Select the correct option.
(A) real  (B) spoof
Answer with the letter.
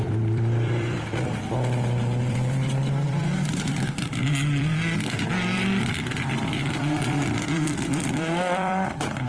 B